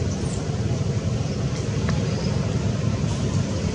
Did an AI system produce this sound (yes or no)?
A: yes